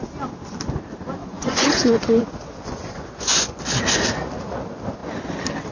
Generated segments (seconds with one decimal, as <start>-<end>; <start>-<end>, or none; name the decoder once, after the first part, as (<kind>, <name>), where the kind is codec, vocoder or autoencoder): 1.2-3.6 (vocoder, Vocos)